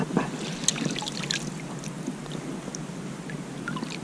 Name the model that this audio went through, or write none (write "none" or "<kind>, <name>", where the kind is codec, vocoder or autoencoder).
none